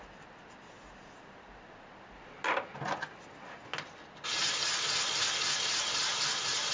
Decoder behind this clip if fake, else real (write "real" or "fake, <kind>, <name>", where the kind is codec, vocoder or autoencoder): real